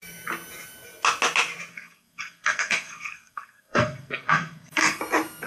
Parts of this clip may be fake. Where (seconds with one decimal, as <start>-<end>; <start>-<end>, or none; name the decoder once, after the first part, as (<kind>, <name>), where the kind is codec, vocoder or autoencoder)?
1.7-5.0 (codec, SNAC)